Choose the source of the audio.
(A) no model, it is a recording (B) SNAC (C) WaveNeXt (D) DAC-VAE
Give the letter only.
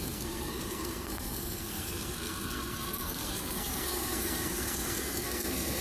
B